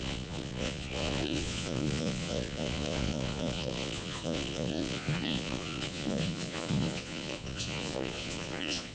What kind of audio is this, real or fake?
fake